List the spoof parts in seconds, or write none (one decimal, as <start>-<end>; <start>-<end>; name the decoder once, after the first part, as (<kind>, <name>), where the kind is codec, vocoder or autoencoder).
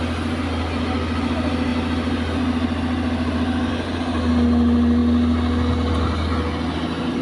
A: none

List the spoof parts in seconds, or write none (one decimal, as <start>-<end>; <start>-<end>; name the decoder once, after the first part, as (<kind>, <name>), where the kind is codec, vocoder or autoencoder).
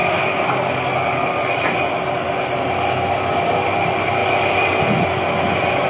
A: none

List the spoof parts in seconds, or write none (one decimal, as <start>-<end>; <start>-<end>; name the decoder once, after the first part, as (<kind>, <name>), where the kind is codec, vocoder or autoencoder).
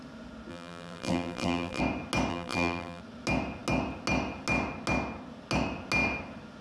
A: 0.5-1.8 (vocoder, BigVGAN v2); 2.3-3.0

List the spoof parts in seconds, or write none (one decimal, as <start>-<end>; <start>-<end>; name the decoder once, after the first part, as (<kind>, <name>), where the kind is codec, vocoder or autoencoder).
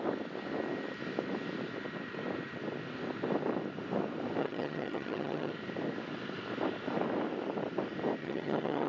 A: 4.4-5.5 (vocoder, HiFi-GAN); 8.2-8.9